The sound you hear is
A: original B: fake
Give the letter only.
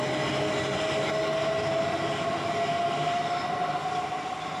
A